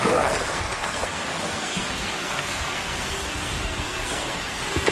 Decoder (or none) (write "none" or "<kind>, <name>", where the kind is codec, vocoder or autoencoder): codec, SNAC